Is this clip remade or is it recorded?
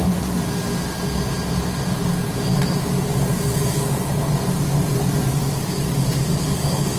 recorded